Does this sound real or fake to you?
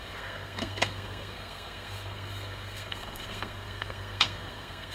fake